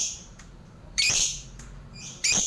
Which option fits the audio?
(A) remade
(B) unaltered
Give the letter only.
A